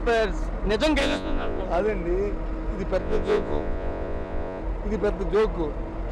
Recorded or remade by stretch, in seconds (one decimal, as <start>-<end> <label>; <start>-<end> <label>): 0.0-1.0 recorded; 1.0-1.6 remade; 1.6-3.0 recorded; 3.0-4.6 remade; 4.6-6.1 recorded